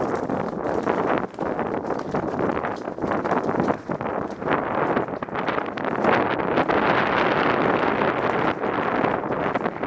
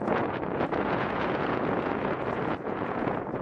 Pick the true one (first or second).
first